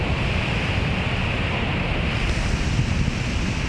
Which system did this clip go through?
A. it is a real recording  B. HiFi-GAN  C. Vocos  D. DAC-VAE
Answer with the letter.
A